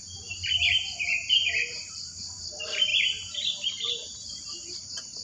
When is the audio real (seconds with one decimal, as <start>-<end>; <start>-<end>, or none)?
2.9-3.9